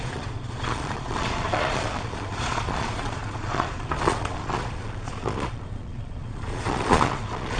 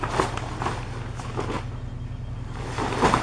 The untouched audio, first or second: second